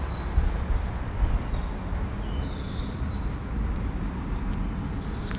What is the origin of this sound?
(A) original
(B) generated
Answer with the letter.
A